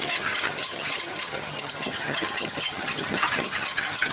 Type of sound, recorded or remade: remade